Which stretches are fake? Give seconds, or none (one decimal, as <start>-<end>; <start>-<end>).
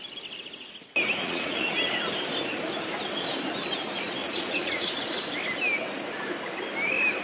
1.2-1.7; 4.2-4.9